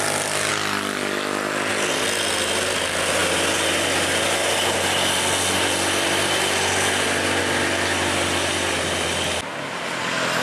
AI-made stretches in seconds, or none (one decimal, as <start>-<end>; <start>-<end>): none